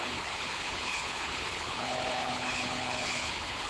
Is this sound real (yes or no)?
no